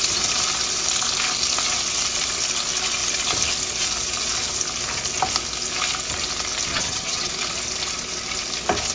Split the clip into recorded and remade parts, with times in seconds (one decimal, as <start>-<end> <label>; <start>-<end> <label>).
0.0-6.7 recorded; 6.7-7.3 remade; 7.3-8.9 recorded